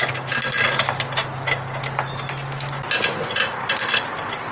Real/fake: real